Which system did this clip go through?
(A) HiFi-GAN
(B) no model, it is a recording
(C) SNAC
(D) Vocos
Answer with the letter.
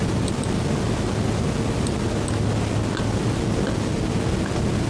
B